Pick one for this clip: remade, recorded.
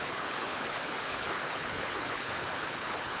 remade